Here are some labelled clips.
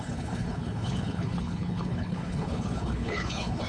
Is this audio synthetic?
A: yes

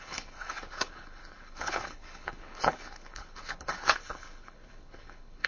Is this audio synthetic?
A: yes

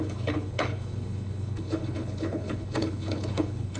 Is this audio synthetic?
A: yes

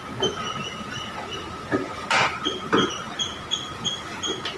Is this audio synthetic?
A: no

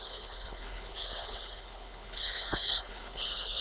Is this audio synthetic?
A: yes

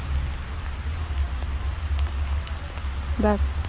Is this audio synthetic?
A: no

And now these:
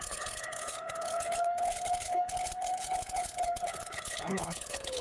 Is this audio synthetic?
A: yes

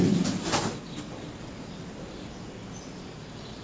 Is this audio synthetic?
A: no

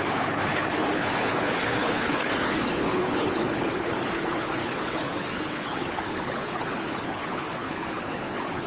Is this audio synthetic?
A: yes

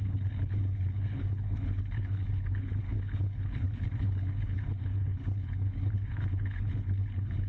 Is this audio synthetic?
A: yes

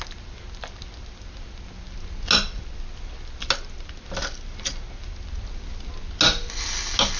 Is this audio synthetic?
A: no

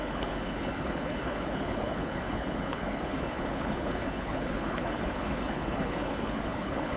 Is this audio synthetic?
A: yes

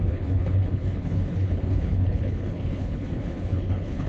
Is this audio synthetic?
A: yes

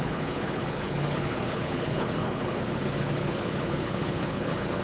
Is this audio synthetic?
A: yes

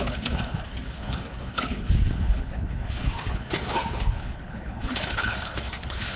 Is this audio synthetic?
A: yes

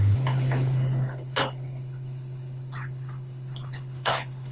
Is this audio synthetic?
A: yes